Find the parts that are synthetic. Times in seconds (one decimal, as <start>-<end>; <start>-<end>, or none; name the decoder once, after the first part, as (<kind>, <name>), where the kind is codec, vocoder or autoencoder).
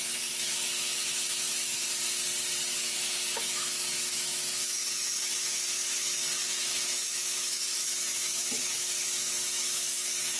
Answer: 0.0-1.8 (autoencoder, DAC-VAE); 2.8-10.4